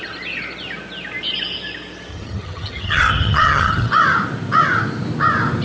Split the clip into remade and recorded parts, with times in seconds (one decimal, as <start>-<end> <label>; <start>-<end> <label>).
0.0-2.1 recorded; 2.1-3.9 remade; 3.9-5.6 recorded